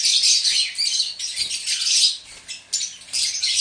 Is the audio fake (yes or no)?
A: no